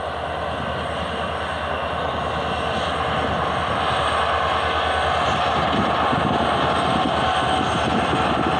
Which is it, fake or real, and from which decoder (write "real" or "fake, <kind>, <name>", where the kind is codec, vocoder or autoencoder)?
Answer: real